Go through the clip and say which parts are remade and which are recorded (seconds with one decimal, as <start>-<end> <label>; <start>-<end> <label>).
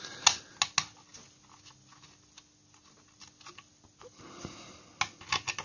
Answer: 0.0-5.6 recorded